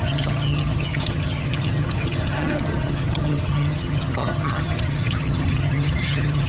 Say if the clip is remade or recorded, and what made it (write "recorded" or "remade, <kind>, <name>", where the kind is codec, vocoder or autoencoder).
remade, vocoder, HiFi-GAN